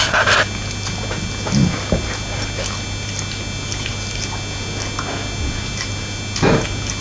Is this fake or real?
real